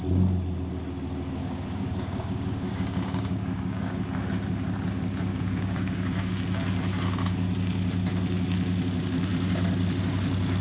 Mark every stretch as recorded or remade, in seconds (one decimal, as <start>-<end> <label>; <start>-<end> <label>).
0.0-1.4 recorded; 1.4-4.0 remade; 4.0-5.3 recorded; 5.3-6.3 remade; 6.3-10.6 recorded